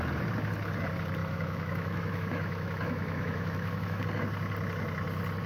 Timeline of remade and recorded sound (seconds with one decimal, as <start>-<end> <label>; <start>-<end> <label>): 0.0-1.2 recorded; 1.2-4.0 remade; 4.0-5.5 recorded